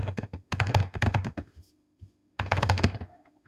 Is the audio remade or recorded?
remade